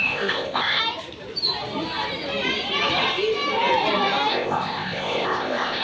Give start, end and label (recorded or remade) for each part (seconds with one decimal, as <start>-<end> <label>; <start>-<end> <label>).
0.0-0.8 remade; 0.8-4.3 recorded; 4.3-5.8 remade

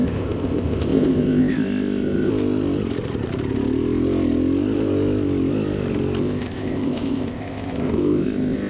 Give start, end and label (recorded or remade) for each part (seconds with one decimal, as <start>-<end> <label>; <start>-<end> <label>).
0.0-2.3 remade; 2.3-6.2 recorded; 6.2-8.7 remade

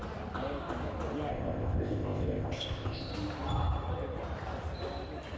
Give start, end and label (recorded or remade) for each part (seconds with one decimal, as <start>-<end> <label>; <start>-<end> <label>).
0.0-1.3 recorded; 1.3-3.1 remade; 3.1-5.4 recorded

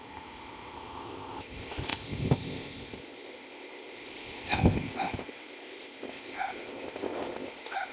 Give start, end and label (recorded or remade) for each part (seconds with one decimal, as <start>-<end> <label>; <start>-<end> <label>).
0.0-7.9 remade

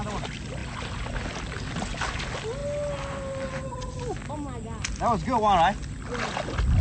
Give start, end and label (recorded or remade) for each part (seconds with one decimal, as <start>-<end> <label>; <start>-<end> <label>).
0.0-6.8 recorded